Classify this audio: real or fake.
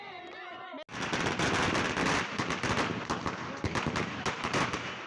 real